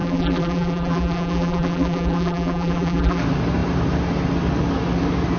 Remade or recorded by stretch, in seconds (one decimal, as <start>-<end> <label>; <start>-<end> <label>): 0.0-3.2 remade; 3.2-5.4 recorded